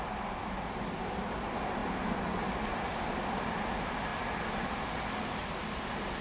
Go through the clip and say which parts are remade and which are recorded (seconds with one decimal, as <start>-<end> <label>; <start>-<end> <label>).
0.0-1.8 recorded; 1.8-3.0 remade; 3.0-6.2 recorded